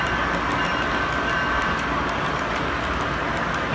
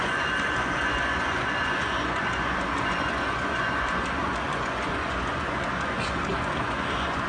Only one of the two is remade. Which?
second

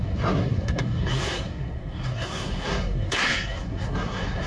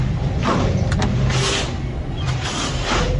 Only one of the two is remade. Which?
first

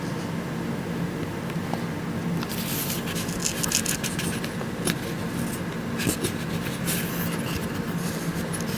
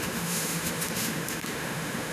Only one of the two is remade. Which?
second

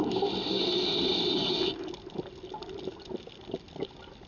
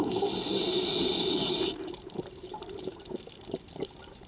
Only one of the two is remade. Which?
second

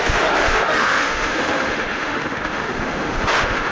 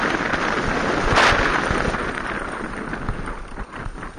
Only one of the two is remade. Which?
first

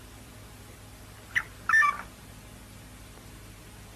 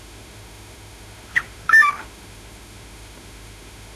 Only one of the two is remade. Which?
second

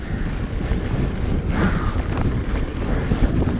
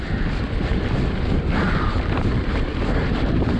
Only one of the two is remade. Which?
second